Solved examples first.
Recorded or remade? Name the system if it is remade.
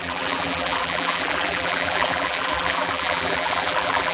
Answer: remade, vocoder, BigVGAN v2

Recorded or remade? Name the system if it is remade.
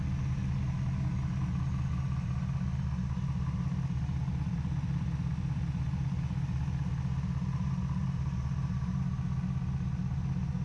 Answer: recorded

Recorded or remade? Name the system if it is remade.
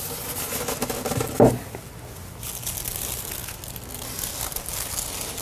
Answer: recorded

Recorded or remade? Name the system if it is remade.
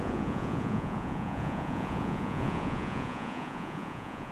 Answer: remade, vocoder, Vocos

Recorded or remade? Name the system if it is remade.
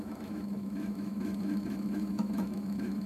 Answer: remade, autoencoder, DAC-VAE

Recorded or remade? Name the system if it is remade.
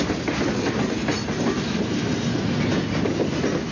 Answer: recorded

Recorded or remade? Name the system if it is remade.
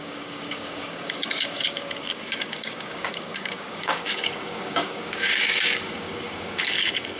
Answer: remade, codec, DAC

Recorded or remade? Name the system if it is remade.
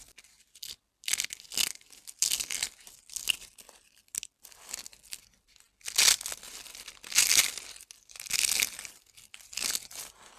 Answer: recorded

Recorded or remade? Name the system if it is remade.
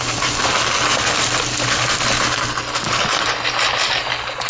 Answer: recorded